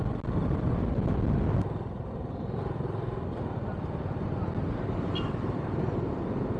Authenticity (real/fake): real